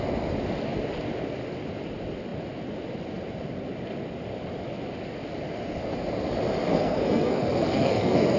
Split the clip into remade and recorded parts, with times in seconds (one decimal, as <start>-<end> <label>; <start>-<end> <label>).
0.0-6.7 recorded; 6.7-8.4 remade